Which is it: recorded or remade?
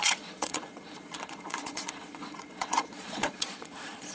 remade